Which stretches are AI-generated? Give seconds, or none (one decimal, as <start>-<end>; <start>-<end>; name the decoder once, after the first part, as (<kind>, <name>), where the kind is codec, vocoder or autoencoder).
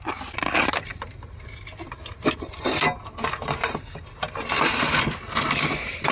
none